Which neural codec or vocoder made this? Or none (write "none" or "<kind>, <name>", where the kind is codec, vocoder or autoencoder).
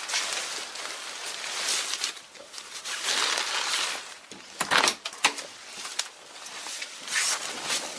none